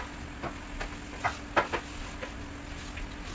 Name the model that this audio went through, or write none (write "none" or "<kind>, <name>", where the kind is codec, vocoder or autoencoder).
none